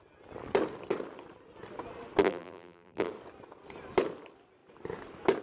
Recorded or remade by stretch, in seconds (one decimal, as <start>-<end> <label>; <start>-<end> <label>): 0.0-2.2 recorded; 2.2-3.1 remade; 3.1-5.4 recorded